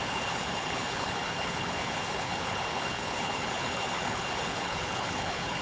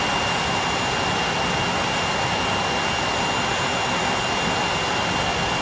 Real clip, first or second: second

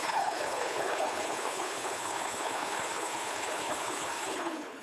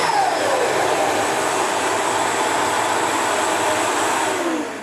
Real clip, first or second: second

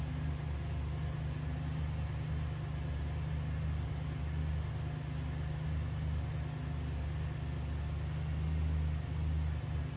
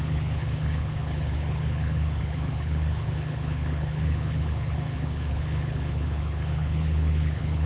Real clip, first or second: first